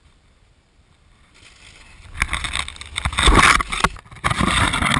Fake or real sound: real